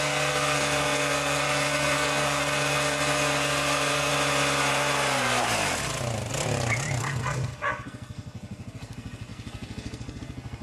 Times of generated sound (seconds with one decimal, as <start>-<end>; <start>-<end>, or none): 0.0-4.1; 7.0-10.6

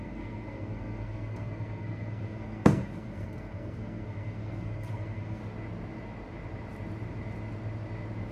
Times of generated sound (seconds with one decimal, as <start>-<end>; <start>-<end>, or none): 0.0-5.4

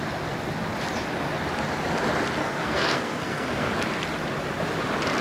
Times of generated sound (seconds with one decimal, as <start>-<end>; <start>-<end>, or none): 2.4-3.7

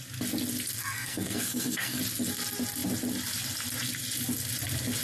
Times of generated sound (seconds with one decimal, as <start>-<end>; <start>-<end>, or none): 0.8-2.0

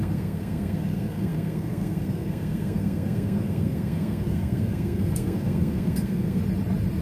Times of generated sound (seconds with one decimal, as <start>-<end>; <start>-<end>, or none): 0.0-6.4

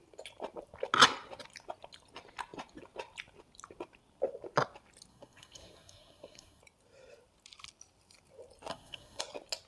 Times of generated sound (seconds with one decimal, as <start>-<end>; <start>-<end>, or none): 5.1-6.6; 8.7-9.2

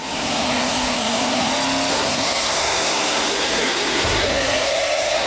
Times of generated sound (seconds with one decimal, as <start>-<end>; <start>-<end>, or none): 0.0-1.5; 1.9-5.3